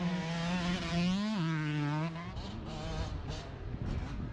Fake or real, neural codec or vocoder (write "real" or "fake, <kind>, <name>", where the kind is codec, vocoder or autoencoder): real